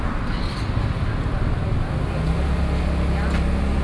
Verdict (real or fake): real